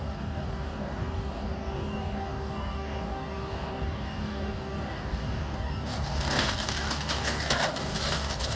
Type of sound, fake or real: fake